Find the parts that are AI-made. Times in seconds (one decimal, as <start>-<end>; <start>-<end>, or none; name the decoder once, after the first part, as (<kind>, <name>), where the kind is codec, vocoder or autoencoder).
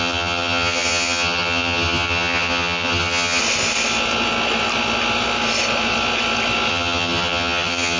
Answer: 0.0-3.4 (vocoder, HiFi-GAN); 6.7-8.0